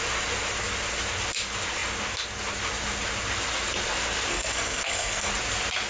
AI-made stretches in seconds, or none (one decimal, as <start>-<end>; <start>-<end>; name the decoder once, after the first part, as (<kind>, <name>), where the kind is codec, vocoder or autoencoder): 4.3-5.3 (codec, SNAC)